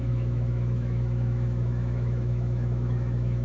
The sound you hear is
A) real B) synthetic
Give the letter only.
B